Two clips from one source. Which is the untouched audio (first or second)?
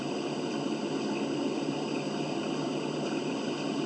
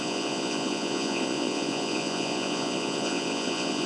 first